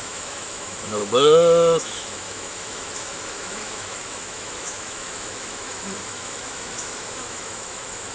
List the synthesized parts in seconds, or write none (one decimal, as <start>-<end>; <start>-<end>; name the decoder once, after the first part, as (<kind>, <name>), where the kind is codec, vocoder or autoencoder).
0.0-8.1 (autoencoder, DAC-VAE)